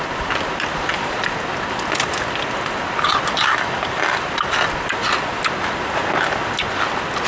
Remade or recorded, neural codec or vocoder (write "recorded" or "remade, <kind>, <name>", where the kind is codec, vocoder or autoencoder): recorded